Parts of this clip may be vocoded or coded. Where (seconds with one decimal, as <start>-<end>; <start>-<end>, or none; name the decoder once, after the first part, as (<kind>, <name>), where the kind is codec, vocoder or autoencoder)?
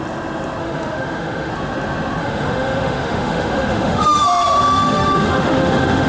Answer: 0.6-1.5 (autoencoder, DAC-VAE); 2.2-6.1